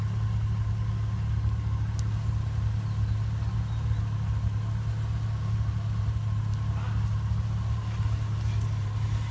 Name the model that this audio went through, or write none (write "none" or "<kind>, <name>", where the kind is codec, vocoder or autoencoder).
none